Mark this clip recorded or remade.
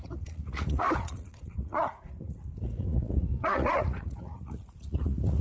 remade